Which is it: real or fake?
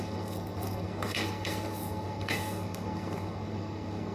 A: fake